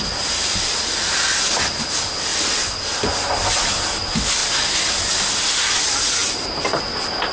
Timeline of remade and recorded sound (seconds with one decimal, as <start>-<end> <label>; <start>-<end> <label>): 0.0-7.3 recorded